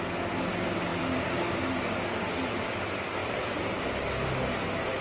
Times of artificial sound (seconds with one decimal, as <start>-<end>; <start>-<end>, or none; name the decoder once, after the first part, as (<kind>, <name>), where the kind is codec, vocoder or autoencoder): 0.9-2.8 (vocoder, BigVGAN v2); 3.2-3.8